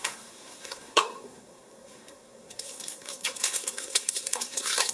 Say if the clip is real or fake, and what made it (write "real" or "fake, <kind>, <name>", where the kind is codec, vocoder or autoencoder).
fake, codec, SNAC